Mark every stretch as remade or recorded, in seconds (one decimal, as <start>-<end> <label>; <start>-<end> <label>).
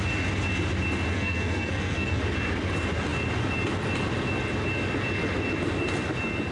0.0-1.1 recorded; 1.1-2.2 remade; 2.2-6.5 recorded